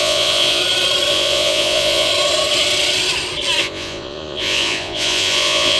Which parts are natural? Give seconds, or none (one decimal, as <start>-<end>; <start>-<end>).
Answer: 0.6-1.1; 2.1-3.6

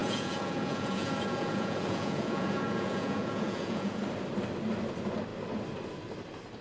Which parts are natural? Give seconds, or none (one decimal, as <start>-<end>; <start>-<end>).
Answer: 4.0-6.6